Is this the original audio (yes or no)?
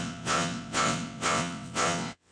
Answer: no